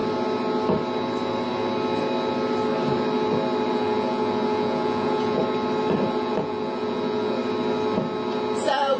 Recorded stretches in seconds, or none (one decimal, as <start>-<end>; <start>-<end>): 0.0-3.7; 5.4-6.1; 7.4-8.6